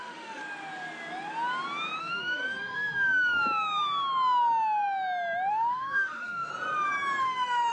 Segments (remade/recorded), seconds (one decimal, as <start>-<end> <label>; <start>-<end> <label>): 0.0-0.4 remade; 0.4-2.0 recorded; 2.0-3.4 remade; 3.4-5.5 recorded; 5.5-6.5 remade; 6.5-7.2 recorded; 7.2-7.7 remade